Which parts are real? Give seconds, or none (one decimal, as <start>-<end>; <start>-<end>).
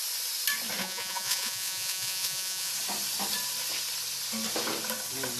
0.0-0.8; 2.7-5.4